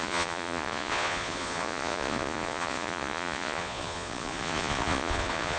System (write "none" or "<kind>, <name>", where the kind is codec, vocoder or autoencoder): vocoder, Vocos